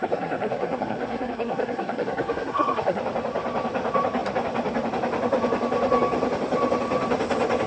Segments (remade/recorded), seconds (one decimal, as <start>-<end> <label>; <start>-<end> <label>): 0.0-3.0 remade; 3.0-7.7 recorded